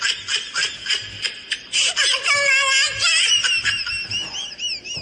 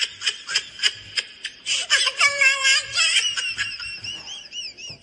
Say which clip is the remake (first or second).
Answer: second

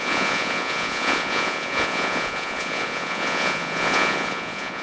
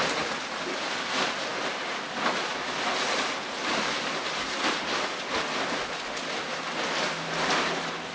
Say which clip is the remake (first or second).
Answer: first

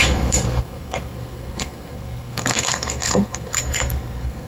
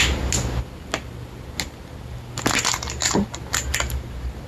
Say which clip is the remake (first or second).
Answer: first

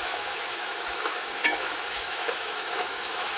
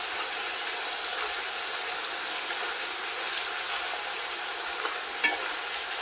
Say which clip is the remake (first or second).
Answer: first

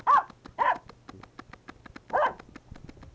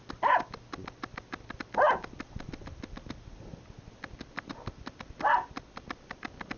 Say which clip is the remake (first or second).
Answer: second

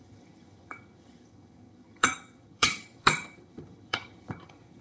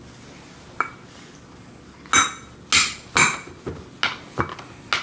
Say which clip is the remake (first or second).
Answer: first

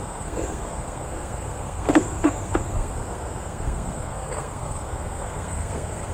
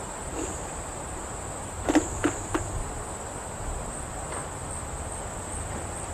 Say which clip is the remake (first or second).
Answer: first